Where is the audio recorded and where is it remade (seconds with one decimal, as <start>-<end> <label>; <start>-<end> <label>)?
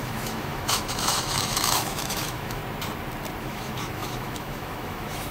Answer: 0.0-2.6 remade; 2.6-3.4 recorded; 3.4-5.3 remade